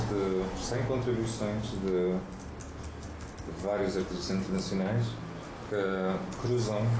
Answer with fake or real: real